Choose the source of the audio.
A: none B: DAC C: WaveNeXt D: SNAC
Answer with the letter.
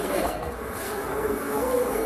D